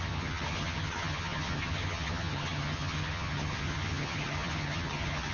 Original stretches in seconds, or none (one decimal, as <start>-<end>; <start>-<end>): none